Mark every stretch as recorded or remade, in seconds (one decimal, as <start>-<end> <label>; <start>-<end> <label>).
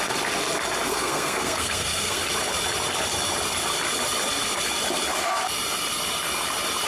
0.0-0.9 recorded; 0.9-2.2 remade; 2.2-6.9 recorded